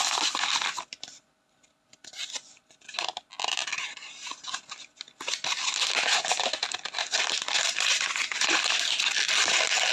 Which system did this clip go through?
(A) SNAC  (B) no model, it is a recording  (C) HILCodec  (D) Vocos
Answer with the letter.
B